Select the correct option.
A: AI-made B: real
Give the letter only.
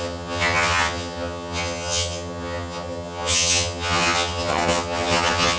A